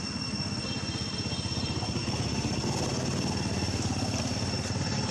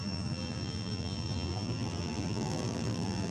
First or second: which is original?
first